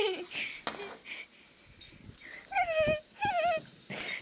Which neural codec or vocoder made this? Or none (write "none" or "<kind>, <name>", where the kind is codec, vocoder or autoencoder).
none